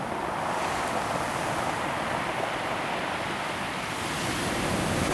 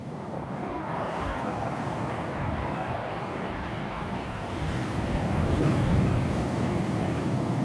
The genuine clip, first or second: first